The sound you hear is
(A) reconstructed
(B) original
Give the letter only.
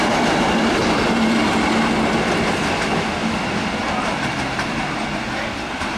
B